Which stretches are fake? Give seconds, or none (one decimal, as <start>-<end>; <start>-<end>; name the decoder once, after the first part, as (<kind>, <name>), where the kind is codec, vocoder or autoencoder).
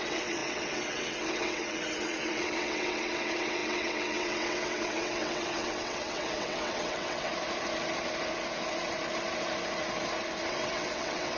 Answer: 0.0-7.3 (vocoder, WaveNeXt); 10.5-11.4